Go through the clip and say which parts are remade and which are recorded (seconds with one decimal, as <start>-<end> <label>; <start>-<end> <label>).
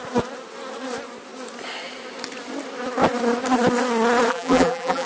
0.0-4.3 recorded; 4.3-5.1 remade